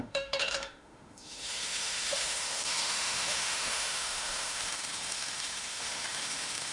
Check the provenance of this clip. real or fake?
fake